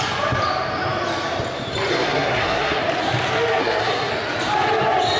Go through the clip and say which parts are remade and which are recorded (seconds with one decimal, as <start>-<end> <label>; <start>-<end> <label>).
0.0-1.9 recorded; 1.9-2.8 remade; 2.8-3.6 recorded; 3.6-4.1 remade; 4.1-5.2 recorded